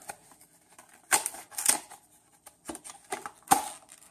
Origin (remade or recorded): recorded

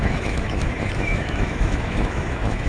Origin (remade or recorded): remade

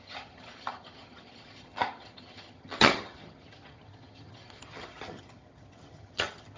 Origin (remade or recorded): remade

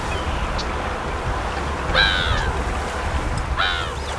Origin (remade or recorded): recorded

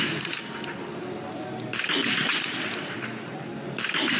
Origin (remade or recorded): recorded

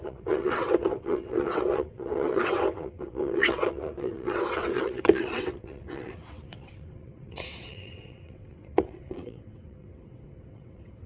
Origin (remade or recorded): remade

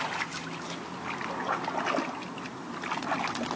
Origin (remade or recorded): recorded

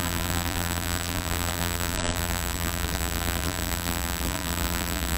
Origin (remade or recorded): remade